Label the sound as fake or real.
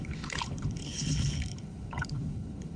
fake